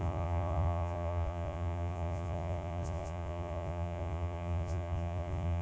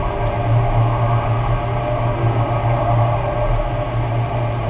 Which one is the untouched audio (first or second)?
second